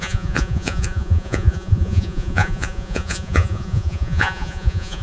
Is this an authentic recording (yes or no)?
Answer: no